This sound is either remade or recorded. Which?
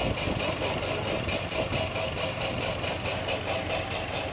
recorded